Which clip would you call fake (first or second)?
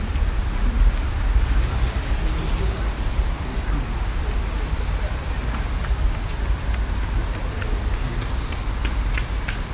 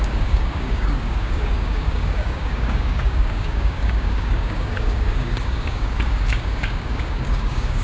second